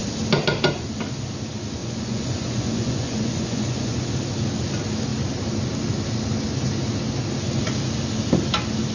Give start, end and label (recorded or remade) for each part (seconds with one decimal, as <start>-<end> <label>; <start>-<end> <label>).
0.0-1.8 recorded; 1.8-4.0 remade; 4.0-8.9 recorded